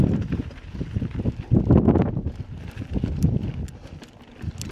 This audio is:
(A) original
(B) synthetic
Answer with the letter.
A